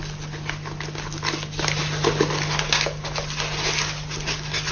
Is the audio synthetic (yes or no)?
no